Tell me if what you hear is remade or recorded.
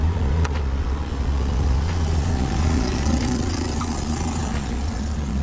remade